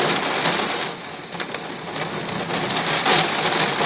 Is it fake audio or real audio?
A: real